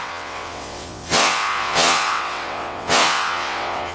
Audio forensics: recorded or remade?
remade